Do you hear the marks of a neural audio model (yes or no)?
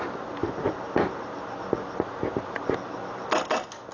no